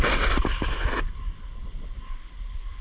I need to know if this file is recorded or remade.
recorded